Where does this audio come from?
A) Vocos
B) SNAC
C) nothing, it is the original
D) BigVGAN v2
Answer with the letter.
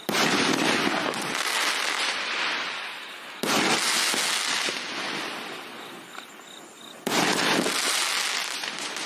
C